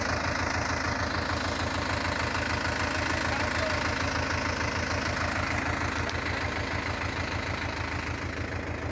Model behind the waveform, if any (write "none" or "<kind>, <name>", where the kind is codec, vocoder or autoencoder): none